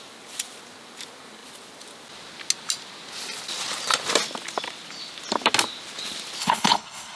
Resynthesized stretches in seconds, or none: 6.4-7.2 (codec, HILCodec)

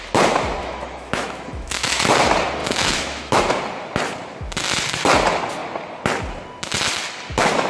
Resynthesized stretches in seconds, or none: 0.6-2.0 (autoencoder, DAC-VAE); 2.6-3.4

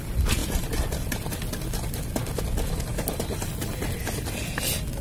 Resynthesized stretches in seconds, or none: none

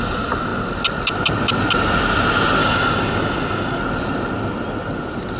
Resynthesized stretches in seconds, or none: 2.6-3.8 (codec, DAC)